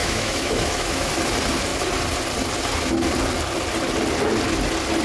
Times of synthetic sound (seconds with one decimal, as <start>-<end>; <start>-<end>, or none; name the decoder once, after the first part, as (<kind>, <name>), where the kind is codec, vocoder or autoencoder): 0.0-1.1 (autoencoder, DAC-VAE)